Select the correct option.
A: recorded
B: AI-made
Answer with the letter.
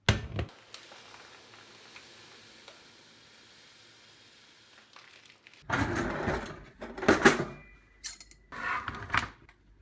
A